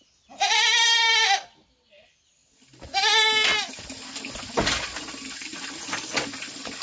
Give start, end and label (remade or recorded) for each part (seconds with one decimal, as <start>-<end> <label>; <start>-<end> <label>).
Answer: 0.0-6.8 recorded